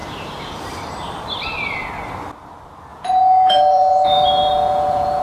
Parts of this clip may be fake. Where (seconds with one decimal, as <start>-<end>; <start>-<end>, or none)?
2.9-5.2